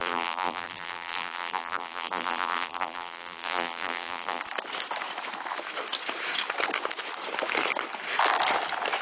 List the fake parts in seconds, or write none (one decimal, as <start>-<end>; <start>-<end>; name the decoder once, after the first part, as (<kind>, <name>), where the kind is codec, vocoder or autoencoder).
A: 0.0-4.4 (vocoder, BigVGAN v2)